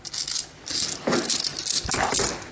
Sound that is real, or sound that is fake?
real